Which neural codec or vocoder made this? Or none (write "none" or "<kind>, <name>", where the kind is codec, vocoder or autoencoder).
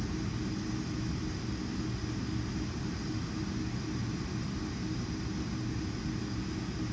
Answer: none